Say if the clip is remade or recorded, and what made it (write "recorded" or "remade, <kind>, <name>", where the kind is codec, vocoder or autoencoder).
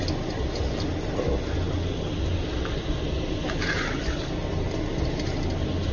recorded